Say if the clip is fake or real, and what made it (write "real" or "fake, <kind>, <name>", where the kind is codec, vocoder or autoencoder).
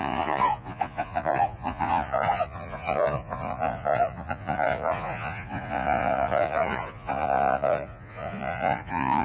fake, vocoder, Vocos